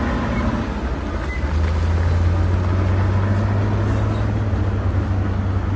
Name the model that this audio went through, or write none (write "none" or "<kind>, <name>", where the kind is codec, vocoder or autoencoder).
none